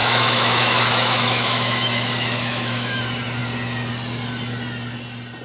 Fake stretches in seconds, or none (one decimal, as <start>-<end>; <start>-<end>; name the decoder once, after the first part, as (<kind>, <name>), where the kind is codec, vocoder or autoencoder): 0.0-3.0 (autoencoder, DAC-VAE)